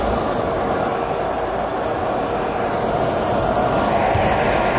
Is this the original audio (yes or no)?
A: yes